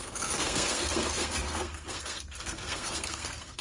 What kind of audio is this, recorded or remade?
remade